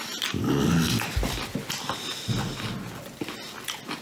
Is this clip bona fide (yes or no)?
yes